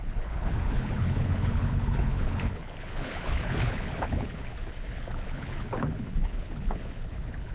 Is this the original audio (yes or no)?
no